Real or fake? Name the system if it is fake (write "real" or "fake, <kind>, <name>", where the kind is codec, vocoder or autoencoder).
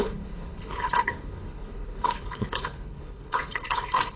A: fake, codec, HILCodec